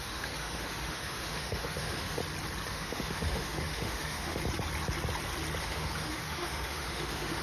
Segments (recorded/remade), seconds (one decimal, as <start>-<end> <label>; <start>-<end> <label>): 0.0-2.2 remade; 2.2-2.7 recorded; 2.7-4.4 remade; 4.4-5.6 recorded; 5.6-7.4 remade